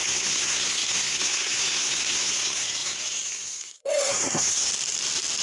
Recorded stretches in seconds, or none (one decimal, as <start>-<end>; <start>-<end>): 4.7-5.4